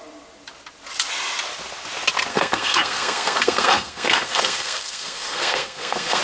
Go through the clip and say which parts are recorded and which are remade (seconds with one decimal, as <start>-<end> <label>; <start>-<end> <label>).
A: 0.0-2.3 recorded; 2.3-6.2 remade